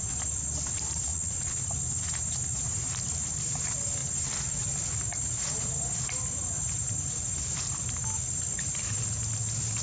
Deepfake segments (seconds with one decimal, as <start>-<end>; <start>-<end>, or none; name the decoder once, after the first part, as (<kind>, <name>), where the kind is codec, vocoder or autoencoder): 1.1-1.7 (vocoder, Vocos)